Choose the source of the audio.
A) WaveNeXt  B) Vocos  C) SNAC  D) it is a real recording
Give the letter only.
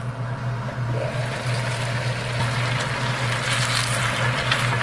D